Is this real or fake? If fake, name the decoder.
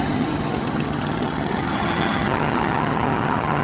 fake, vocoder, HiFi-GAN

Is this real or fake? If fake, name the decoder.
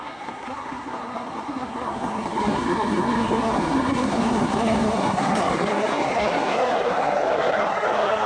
fake, codec, SNAC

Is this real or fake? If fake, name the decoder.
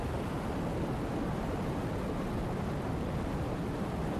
real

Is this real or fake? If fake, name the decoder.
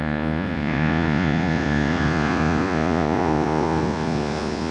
fake, vocoder, Vocos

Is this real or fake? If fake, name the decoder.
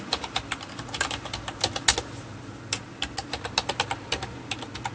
real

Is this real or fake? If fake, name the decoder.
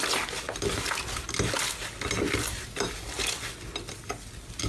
real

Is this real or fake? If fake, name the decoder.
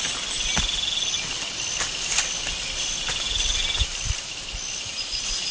real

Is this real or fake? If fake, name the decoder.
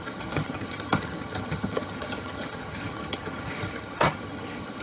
fake, vocoder, HiFi-GAN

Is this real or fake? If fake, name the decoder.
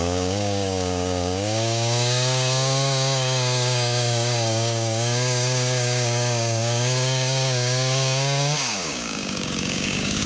fake, codec, DAC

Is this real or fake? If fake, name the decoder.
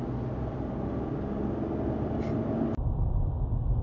real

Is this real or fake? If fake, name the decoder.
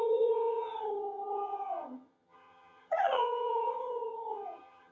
fake, vocoder, HiFi-GAN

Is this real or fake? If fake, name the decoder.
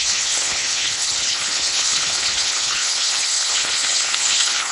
fake, codec, HILCodec